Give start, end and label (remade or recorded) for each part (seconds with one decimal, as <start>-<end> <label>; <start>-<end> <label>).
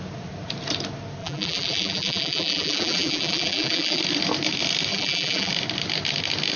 0.0-1.2 recorded; 1.2-4.0 remade; 4.0-4.9 recorded; 4.9-5.5 remade; 5.5-6.6 recorded